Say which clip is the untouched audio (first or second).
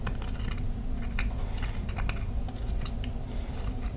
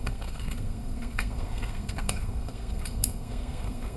first